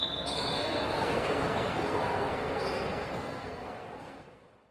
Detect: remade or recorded remade